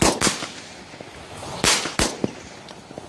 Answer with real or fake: real